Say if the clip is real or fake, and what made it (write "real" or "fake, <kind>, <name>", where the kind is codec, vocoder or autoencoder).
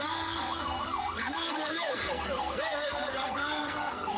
fake, codec, SNAC